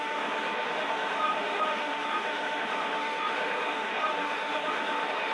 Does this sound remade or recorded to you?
remade